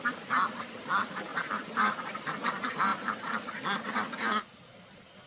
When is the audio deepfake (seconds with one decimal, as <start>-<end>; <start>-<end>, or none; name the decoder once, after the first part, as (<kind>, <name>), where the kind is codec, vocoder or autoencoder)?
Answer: 1.3-2.1 (vocoder, BigVGAN v2)